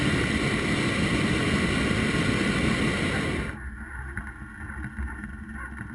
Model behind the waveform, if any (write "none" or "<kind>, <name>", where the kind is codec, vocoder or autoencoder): none